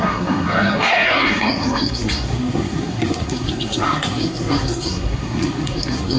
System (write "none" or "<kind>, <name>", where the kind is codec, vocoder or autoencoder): codec, SNAC